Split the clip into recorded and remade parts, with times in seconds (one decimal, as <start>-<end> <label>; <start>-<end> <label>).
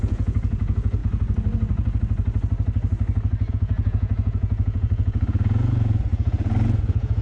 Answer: 0.0-1.0 remade; 1.0-3.5 recorded; 3.5-7.2 remade